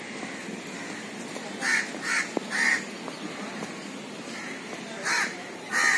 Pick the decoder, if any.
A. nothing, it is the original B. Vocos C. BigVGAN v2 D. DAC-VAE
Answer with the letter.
A